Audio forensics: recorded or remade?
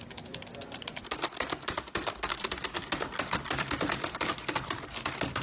recorded